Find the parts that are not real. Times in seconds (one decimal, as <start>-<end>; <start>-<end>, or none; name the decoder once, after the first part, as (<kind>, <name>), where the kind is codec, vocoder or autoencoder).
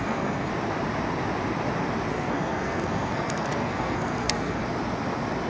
0.0-0.5 (codec, SNAC); 2.1-4.6